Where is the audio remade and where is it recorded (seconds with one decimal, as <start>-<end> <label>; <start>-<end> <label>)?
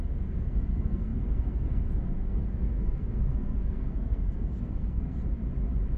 0.0-5.2 remade; 5.2-6.0 recorded